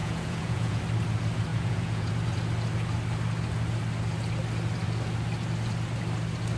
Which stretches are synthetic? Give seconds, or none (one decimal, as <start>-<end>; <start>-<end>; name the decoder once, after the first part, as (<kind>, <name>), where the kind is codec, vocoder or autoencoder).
0.0-0.8 (vocoder, Vocos); 1.5-2.1